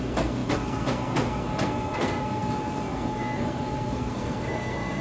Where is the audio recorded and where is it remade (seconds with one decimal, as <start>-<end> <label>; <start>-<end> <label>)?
0.0-5.0 remade